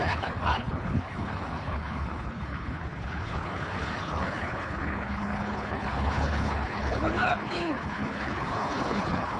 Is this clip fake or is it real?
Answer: fake